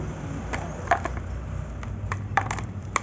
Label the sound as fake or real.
real